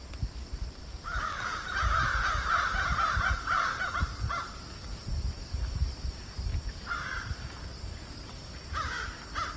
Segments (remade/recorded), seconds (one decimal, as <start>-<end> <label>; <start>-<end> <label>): 0.0-0.8 recorded; 0.8-4.0 remade; 4.0-6.5 recorded; 6.5-8.9 remade; 8.9-9.6 recorded